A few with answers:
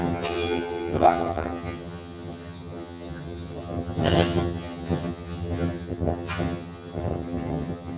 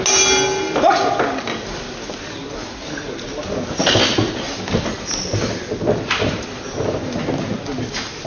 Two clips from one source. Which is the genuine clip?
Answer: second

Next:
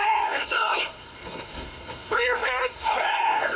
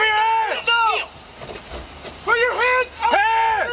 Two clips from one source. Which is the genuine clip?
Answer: second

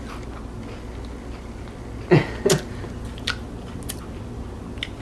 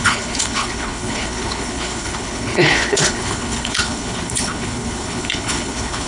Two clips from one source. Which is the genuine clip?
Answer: first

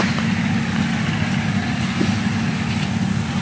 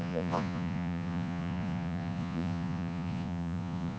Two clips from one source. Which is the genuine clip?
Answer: first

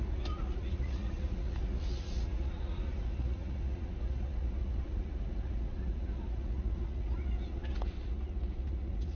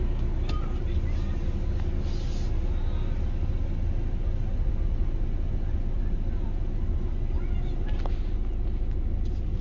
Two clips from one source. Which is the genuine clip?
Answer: second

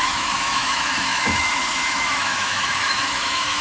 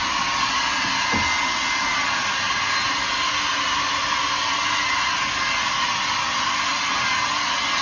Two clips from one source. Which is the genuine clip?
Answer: second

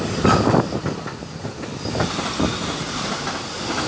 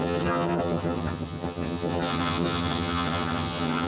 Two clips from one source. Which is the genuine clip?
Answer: first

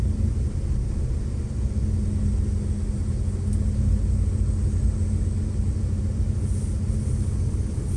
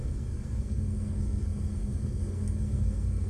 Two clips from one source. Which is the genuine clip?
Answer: first